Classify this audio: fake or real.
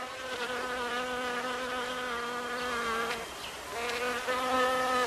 real